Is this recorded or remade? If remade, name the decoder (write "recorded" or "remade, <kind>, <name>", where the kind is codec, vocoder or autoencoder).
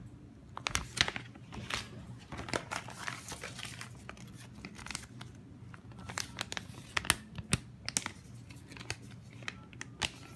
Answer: recorded